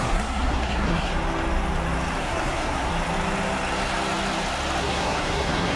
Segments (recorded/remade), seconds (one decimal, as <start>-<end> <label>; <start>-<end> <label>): 0.0-1.1 remade; 1.1-2.2 recorded; 2.2-2.9 remade; 2.9-4.8 recorded; 4.8-5.8 remade